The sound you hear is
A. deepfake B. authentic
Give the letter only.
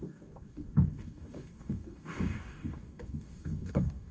A